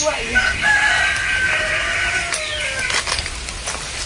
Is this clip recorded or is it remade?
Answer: recorded